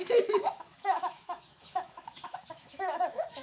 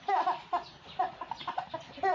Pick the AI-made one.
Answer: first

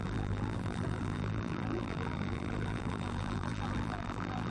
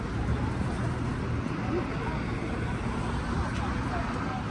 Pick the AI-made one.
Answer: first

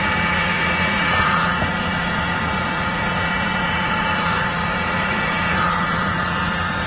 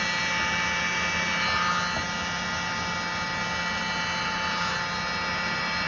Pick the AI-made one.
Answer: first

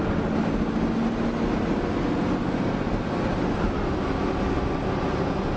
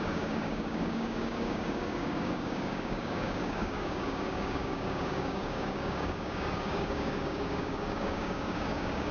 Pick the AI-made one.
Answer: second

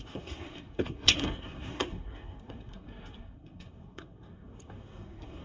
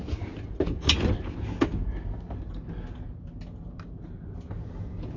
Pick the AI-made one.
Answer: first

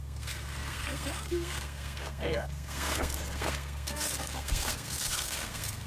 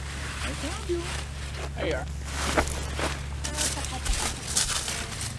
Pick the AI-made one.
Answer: first